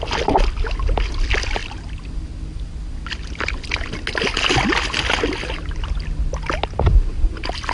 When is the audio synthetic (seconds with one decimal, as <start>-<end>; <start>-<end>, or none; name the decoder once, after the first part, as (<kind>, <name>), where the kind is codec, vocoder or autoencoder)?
none